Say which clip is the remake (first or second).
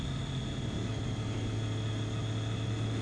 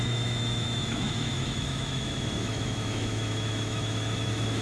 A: second